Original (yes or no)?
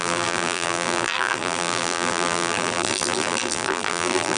no